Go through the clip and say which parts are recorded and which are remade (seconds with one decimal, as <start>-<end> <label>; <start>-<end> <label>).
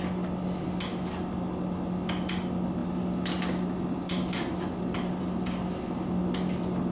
0.0-6.9 recorded